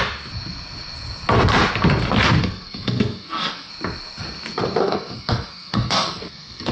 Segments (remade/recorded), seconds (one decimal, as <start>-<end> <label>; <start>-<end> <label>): 0.0-2.4 recorded; 2.4-3.7 remade; 3.7-4.8 recorded; 4.8-6.7 remade

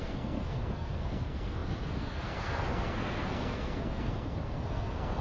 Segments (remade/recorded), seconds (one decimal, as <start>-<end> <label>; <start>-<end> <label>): 0.0-5.2 remade

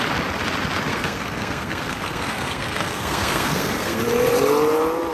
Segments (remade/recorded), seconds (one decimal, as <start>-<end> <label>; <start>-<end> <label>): 0.0-0.9 recorded; 0.9-4.0 remade; 4.0-5.1 recorded

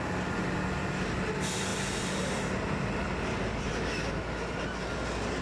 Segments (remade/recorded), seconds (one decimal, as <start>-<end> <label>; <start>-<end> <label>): 0.0-5.4 recorded